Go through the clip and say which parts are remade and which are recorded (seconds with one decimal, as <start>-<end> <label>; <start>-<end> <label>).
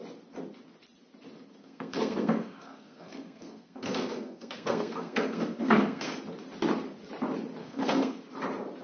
0.0-1.6 recorded; 1.6-6.2 remade; 6.2-7.6 recorded; 7.6-8.2 remade; 8.2-8.8 recorded